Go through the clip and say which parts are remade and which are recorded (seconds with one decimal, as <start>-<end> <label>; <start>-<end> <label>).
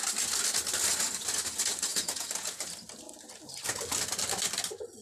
0.0-1.9 recorded; 1.9-2.6 remade; 2.6-5.0 recorded